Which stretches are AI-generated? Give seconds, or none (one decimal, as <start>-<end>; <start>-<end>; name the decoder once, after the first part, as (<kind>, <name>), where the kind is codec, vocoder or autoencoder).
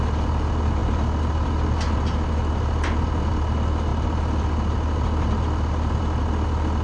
none